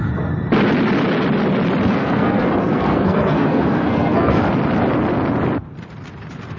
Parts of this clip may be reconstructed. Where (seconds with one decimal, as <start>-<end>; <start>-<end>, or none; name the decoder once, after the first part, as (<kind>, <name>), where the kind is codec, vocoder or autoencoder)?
2.0-4.4 (codec, SNAC)